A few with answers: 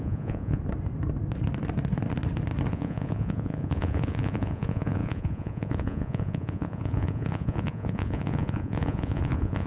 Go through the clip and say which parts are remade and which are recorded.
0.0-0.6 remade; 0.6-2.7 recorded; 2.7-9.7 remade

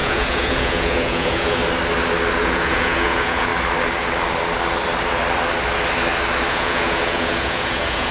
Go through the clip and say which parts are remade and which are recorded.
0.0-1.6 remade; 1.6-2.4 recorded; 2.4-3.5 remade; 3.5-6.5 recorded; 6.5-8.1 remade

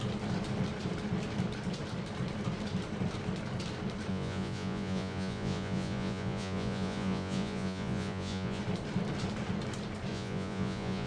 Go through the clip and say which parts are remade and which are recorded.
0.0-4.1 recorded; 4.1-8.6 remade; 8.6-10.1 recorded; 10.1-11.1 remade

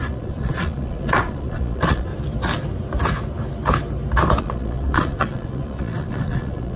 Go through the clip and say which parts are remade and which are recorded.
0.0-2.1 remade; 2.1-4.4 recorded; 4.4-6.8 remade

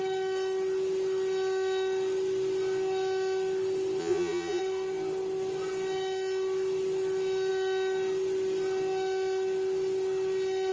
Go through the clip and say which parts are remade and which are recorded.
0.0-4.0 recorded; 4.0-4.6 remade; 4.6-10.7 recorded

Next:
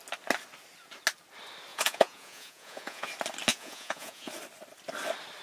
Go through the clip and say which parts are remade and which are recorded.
0.0-1.7 recorded; 1.7-3.1 remade; 3.1-3.5 recorded; 3.5-4.3 remade; 4.3-5.4 recorded

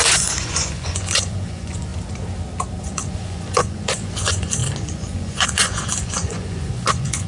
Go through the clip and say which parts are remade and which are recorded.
0.0-1.9 remade; 1.9-2.8 recorded; 2.8-7.3 remade